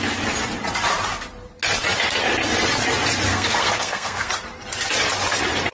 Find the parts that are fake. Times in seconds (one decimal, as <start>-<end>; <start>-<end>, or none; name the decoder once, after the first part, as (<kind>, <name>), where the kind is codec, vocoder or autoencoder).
3.3-4.3 (codec, SNAC)